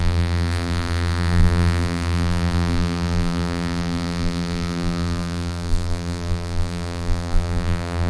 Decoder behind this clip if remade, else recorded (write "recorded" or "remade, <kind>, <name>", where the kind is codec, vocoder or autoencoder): remade, vocoder, BigVGAN v2